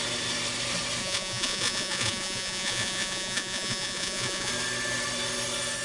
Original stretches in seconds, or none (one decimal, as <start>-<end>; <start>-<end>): 0.0-1.0; 4.5-5.8